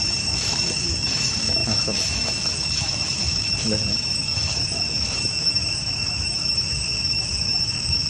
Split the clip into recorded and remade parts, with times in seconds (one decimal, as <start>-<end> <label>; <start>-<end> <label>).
0.0-8.1 remade